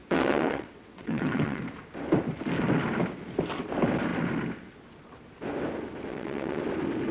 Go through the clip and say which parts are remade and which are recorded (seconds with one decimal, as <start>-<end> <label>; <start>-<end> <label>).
0.0-1.6 remade; 1.6-6.1 recorded; 6.1-6.6 remade; 6.6-7.1 recorded